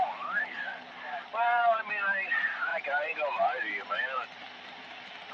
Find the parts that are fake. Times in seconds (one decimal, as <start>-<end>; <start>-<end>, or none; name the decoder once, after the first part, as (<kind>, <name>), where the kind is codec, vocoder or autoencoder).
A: 0.0-5.3 (vocoder, BigVGAN v2)